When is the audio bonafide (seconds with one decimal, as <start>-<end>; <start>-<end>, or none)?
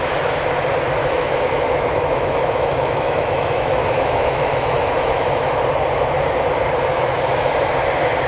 0.0-1.0; 5.6-6.9; 7.5-8.3